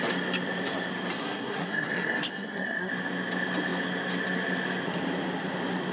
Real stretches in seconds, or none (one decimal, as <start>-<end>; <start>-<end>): 0.0-1.2; 2.9-5.9

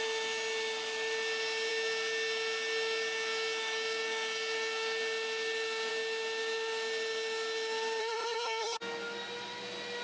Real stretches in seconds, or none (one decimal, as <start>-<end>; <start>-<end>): 0.0-8.0; 8.8-10.0

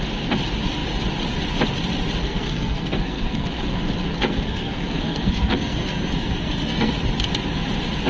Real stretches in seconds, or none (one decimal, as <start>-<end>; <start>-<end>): 0.0-2.2; 3.5-4.1; 6.9-8.1

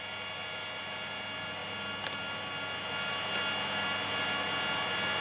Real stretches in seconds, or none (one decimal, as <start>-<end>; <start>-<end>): 0.0-5.2

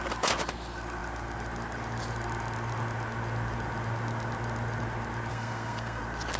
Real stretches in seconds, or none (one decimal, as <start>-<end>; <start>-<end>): 0.0-5.3; 6.0-6.4

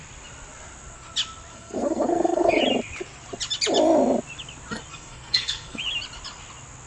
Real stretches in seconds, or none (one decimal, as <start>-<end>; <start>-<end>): 0.0-1.5; 2.6-4.9; 5.8-6.9

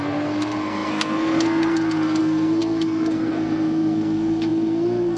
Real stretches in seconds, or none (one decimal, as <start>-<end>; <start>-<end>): none